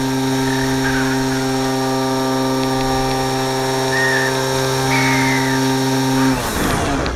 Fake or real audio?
real